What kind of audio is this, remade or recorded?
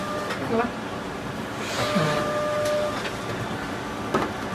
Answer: recorded